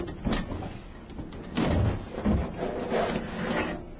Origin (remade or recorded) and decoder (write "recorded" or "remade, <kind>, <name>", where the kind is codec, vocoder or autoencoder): recorded